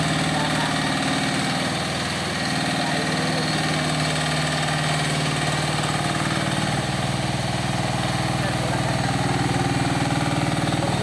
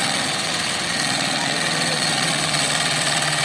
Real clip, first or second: first